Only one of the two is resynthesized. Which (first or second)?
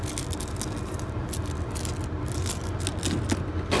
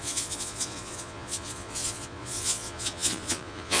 second